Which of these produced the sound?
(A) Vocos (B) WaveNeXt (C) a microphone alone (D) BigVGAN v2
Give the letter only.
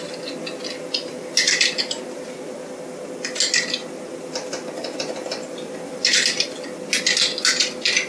C